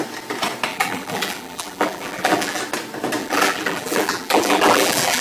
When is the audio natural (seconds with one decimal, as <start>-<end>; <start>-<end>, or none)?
0.0-0.7; 2.6-3.2